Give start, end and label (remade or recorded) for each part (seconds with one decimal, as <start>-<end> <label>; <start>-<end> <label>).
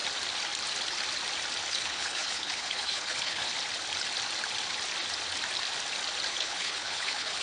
0.0-1.7 recorded; 1.7-3.5 remade; 3.5-6.3 recorded; 6.3-7.4 remade